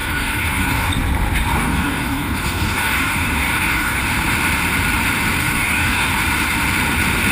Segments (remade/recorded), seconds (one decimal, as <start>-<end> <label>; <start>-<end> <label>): 0.0-0.9 remade; 0.9-1.6 recorded; 1.6-4.0 remade; 4.0-5.4 recorded; 5.4-6.1 remade; 6.1-7.3 recorded